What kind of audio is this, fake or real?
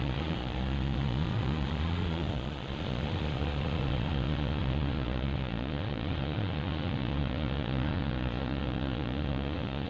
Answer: fake